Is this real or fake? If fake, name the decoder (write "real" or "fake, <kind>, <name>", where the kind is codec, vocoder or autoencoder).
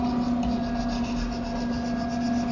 real